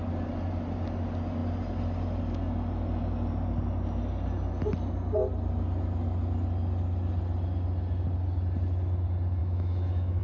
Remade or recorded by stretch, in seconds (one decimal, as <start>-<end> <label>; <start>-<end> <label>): 0.0-9.4 recorded; 9.4-10.2 remade

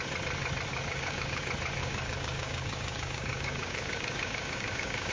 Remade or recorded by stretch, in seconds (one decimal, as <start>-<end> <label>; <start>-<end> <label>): 0.0-0.7 recorded; 0.7-1.4 remade; 1.4-1.8 recorded; 1.8-5.1 remade

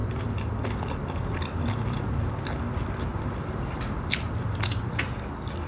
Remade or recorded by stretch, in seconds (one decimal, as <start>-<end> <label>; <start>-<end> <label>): 0.0-0.5 remade; 0.5-3.1 recorded; 3.1-5.0 remade; 5.0-5.7 recorded

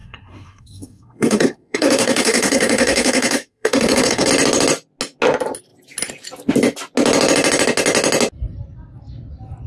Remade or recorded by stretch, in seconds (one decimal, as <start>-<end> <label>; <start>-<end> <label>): 0.0-4.3 remade; 4.3-9.7 recorded

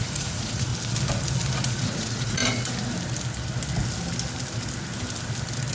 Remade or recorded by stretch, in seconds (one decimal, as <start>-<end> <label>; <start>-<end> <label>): 0.0-0.7 remade; 0.7-1.6 recorded; 1.6-2.4 remade; 2.4-5.7 recorded

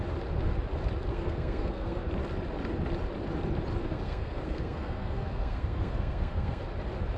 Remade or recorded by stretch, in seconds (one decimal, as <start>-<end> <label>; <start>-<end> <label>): 0.0-1.1 recorded; 1.1-2.1 remade; 2.1-3.8 recorded; 3.8-6.6 remade; 6.6-7.2 recorded

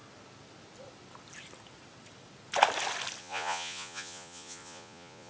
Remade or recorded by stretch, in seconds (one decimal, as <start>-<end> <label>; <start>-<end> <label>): 0.0-3.2 recorded; 3.2-5.3 remade